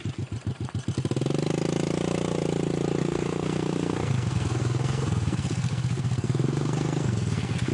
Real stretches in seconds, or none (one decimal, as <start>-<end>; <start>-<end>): 0.0-3.0